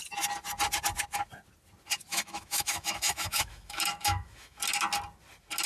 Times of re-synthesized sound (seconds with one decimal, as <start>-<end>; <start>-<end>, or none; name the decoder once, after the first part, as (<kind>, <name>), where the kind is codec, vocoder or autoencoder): 2.1-4.6 (autoencoder, DAC-VAE)